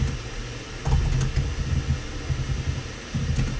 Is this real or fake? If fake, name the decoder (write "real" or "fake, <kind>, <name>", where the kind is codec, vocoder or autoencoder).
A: real